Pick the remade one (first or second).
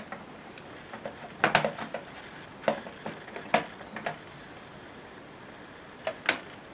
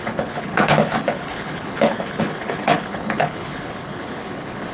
second